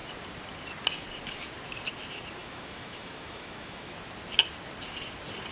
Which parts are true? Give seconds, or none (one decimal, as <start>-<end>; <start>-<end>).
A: 0.0-2.4; 3.9-5.5